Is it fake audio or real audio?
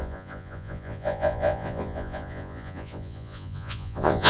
fake